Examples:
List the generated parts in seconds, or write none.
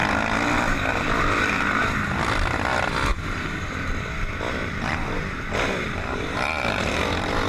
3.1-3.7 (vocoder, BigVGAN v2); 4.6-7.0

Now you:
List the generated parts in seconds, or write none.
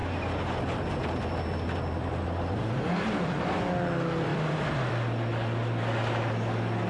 none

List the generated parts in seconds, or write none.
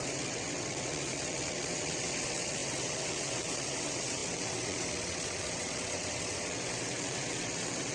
0.0-7.9 (vocoder, WaveNeXt)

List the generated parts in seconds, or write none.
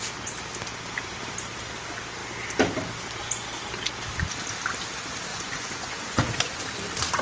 5.3-6.6 (vocoder, Vocos)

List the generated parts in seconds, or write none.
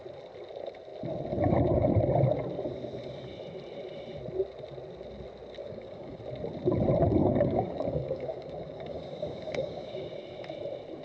5.6-6.2 (codec, DAC); 7.2-10.1